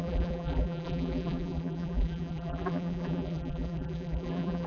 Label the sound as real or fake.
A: fake